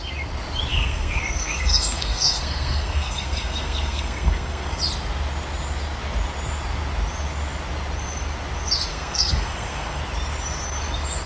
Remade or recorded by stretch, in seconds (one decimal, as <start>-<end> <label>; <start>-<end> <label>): 0.0-0.7 recorded; 0.7-4.8 remade; 4.8-8.9 recorded; 8.9-10.0 remade; 10.0-11.3 recorded